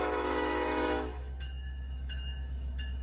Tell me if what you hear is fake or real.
fake